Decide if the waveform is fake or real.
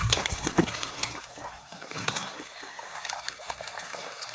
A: fake